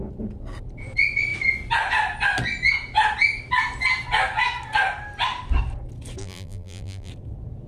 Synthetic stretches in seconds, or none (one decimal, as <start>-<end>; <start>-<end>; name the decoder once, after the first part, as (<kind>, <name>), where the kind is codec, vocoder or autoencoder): 6.2-7.1 (vocoder, BigVGAN v2)